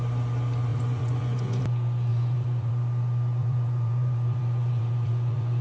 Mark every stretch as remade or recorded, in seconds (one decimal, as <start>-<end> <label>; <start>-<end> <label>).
0.0-0.7 recorded; 0.7-1.6 remade; 1.6-2.1 recorded; 2.1-2.7 remade; 2.7-3.4 recorded; 3.4-5.6 remade